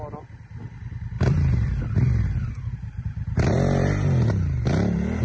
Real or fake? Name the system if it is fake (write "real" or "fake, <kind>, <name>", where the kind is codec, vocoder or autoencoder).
real